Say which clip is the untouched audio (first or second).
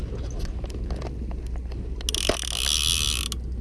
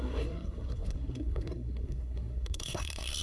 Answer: first